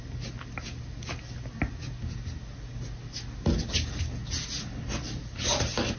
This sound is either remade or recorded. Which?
recorded